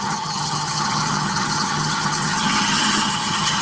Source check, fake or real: fake